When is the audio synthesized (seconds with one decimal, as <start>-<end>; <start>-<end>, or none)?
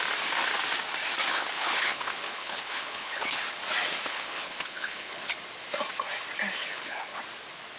1.3-3.4; 4.1-5.3; 6.6-7.2